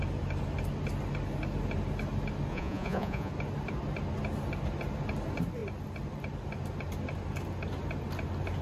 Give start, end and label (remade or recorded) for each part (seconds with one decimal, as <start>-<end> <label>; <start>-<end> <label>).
0.0-2.5 recorded; 2.5-3.3 remade; 3.3-8.6 recorded